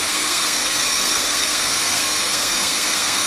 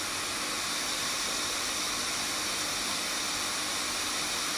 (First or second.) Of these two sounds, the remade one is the first